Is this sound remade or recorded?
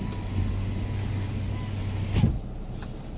recorded